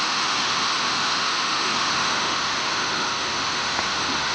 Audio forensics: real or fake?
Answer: fake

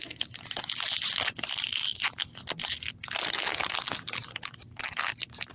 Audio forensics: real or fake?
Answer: real